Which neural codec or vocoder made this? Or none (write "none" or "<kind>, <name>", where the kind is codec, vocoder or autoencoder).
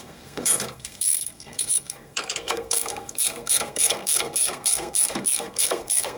codec, SNAC